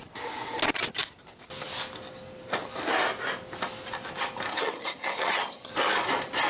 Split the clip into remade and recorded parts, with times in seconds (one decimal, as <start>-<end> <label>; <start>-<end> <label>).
0.0-4.5 recorded; 4.5-5.7 remade; 5.7-6.5 recorded